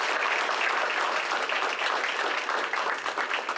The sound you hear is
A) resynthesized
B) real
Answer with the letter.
B